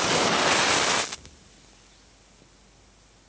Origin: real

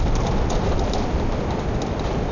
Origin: real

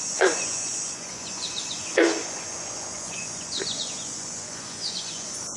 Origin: fake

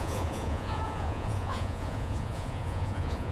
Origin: fake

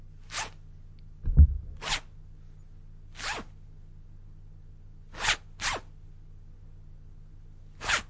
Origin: real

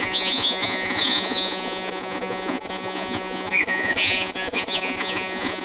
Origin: fake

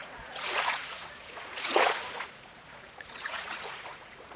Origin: fake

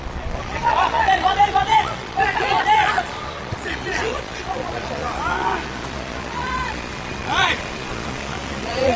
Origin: fake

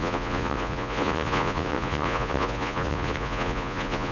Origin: fake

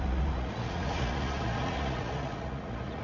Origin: fake